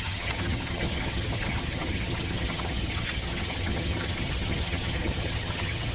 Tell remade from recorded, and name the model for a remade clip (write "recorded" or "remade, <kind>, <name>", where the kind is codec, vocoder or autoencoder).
remade, vocoder, HiFi-GAN